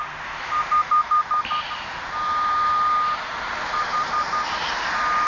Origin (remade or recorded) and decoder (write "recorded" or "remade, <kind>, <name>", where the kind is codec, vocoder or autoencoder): recorded